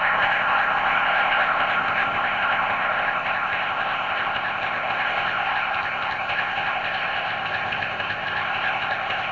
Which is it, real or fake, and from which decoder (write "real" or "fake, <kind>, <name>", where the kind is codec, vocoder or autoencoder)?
fake, codec, ZipCodec